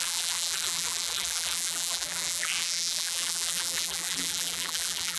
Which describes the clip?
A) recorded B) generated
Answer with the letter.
B